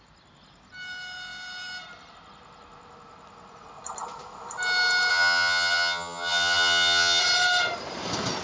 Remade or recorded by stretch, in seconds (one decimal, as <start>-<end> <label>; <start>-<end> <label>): 0.0-5.1 recorded; 5.1-7.2 remade; 7.2-8.4 recorded

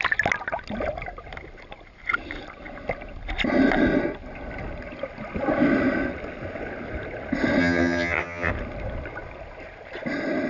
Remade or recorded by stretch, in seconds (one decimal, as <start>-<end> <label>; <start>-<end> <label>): 0.0-7.6 recorded; 7.6-8.5 remade; 8.5-10.5 recorded

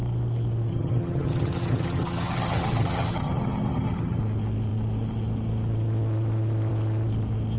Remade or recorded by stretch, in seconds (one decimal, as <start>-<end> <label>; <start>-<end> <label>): 0.0-0.7 recorded; 0.7-4.2 remade; 4.2-7.6 recorded

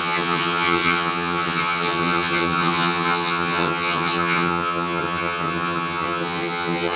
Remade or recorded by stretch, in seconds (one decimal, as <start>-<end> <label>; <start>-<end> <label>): 0.0-7.0 remade